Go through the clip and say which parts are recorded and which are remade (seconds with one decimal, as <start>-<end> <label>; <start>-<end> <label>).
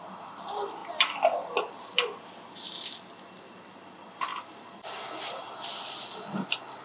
0.0-6.8 recorded